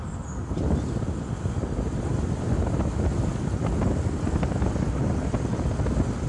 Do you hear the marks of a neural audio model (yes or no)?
no